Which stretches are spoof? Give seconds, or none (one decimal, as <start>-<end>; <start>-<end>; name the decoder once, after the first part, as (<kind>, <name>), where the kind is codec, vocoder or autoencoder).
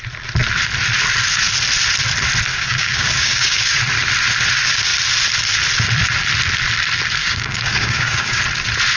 2.5-3.8 (codec, DAC); 7.2-8.4